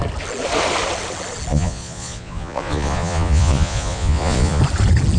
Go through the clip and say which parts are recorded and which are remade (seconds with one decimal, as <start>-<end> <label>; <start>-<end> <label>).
0.0-1.5 recorded; 1.5-4.6 remade; 4.6-5.2 recorded